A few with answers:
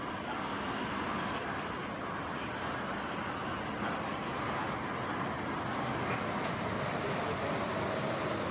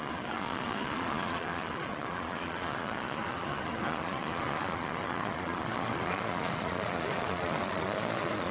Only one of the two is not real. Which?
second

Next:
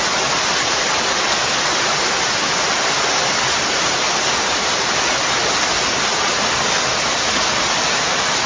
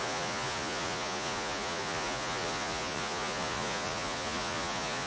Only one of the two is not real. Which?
second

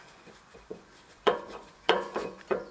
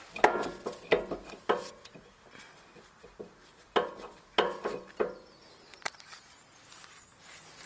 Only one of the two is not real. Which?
first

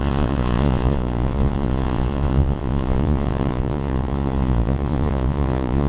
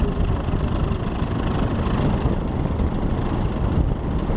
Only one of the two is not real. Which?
first